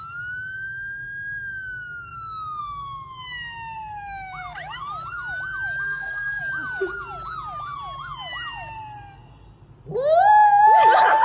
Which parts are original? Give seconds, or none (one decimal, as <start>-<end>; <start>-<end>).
0.0-5.8; 6.4-11.2